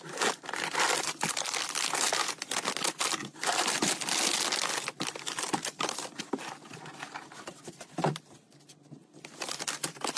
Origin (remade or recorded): remade